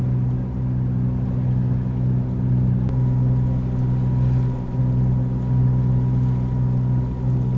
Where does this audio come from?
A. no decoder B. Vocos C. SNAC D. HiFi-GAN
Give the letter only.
A